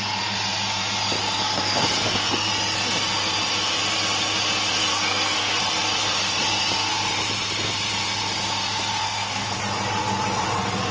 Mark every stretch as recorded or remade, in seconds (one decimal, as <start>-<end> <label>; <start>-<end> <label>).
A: 0.0-1.2 recorded; 1.2-2.5 remade; 2.5-4.9 recorded; 4.9-5.6 remade; 5.6-9.0 recorded; 9.0-9.6 remade; 9.6-10.9 recorded

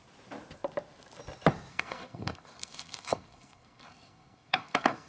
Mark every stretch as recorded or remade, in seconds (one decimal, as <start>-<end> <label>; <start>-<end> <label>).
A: 0.0-1.7 recorded; 1.7-5.1 remade

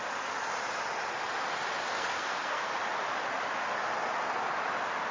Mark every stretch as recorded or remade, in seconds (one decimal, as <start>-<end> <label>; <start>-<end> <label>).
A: 0.0-1.9 recorded; 1.9-2.7 remade; 2.7-5.1 recorded

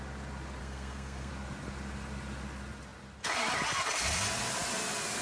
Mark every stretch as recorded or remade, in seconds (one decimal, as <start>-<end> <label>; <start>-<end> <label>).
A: 0.0-0.6 recorded; 0.6-1.3 remade; 1.3-5.2 recorded

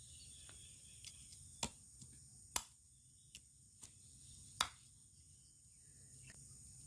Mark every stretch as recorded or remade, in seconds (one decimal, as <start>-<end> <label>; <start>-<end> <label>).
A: 0.0-6.9 recorded

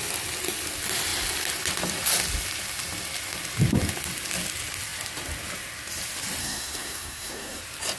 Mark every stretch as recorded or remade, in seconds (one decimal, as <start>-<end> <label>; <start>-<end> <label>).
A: 0.0-6.4 recorded; 6.4-7.6 remade; 7.6-8.0 recorded

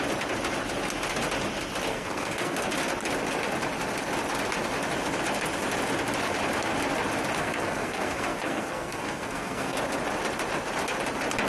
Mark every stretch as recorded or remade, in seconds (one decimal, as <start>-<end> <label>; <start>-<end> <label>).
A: 0.0-1.9 recorded; 1.9-2.7 remade; 2.7-7.4 recorded; 7.4-9.8 remade; 9.8-11.5 recorded